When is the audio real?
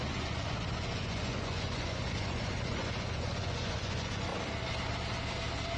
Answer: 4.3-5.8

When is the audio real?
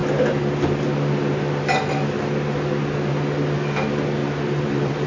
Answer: 0.0-4.2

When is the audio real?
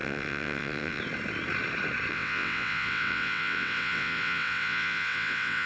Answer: 1.0-2.1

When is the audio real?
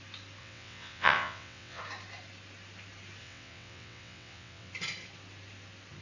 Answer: 0.0-0.4; 1.8-3.2; 4.7-6.0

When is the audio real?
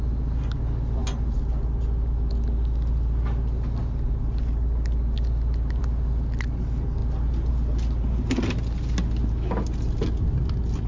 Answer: 0.0-10.9